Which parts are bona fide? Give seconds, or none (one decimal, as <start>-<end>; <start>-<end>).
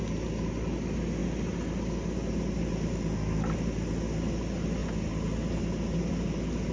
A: 0.0-6.7